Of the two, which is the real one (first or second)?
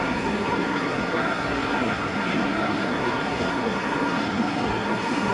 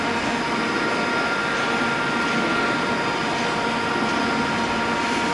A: second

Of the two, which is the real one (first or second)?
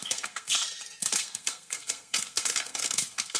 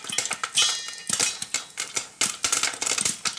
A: second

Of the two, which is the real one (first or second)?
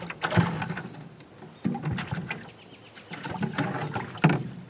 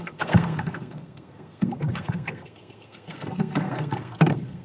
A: first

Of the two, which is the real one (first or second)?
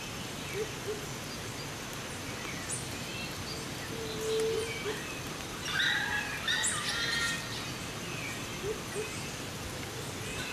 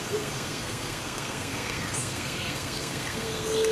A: first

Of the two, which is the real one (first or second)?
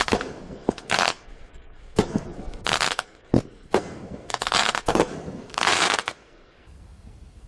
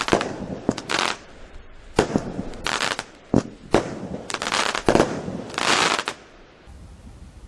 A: second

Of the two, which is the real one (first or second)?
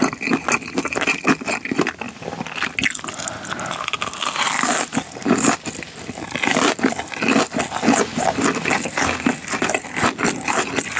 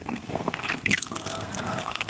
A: first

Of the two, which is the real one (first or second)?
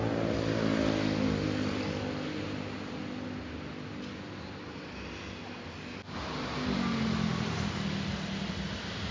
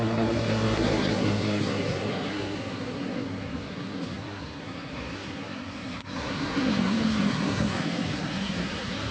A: first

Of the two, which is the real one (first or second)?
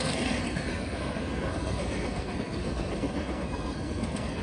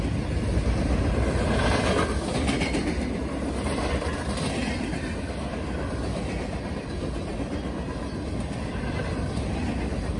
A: second